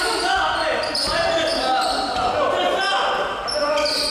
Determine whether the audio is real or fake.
real